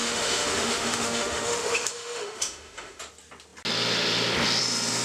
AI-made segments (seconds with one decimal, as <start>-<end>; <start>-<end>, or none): 0.0-3.0